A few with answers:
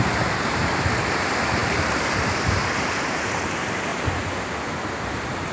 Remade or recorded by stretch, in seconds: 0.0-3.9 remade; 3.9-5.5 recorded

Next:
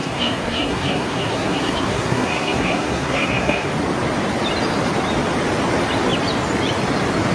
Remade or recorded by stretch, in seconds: 0.0-3.7 remade; 3.7-7.3 recorded

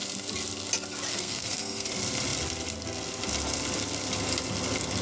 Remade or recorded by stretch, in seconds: 0.0-1.1 recorded; 1.1-1.9 remade; 1.9-5.0 recorded

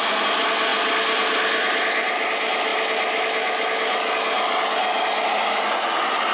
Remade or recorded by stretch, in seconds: 0.0-6.3 recorded

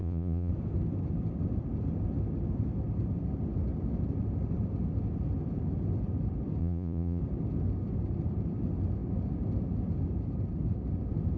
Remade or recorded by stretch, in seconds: 0.0-0.5 remade; 0.5-6.6 recorded; 6.6-7.2 remade; 7.2-11.4 recorded